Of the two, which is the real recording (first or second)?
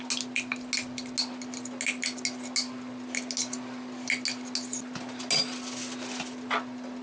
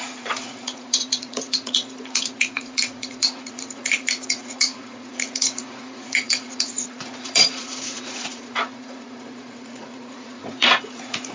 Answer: first